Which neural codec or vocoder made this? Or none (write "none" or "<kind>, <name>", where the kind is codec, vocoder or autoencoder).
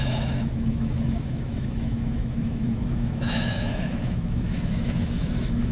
autoencoder, DAC-VAE